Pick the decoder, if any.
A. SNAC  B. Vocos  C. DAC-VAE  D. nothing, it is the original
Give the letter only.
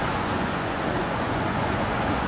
B